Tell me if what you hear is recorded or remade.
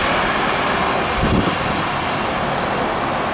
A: recorded